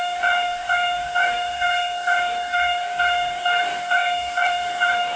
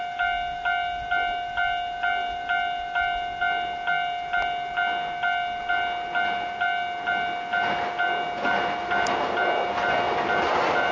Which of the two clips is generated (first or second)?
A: first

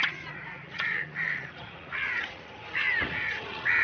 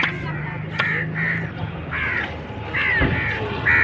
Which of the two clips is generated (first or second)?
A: first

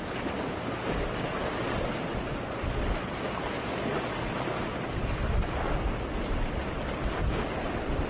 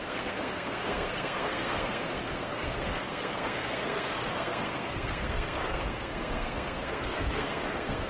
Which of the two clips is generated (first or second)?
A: second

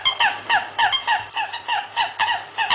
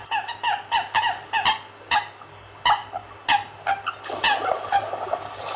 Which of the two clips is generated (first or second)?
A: first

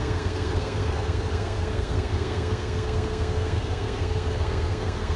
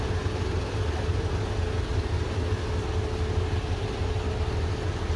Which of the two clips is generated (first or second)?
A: first